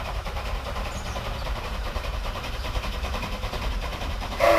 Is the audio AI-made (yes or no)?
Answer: yes